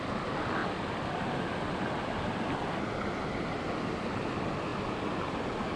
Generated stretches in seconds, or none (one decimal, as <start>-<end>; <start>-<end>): none